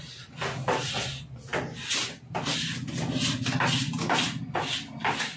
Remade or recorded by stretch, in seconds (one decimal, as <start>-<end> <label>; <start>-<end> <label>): 0.0-5.4 recorded